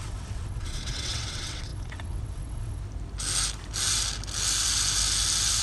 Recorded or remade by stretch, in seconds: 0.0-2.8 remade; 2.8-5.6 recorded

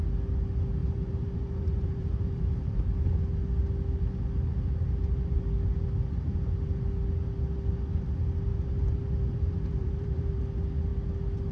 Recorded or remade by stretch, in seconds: 0.0-0.8 recorded; 0.8-3.2 remade; 3.2-4.5 recorded; 4.5-5.4 remade; 5.4-8.5 recorded; 8.5-10.4 remade; 10.4-11.5 recorded